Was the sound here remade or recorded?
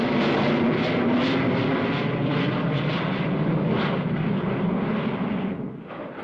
recorded